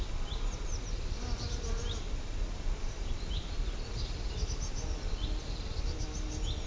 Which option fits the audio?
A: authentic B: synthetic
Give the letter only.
A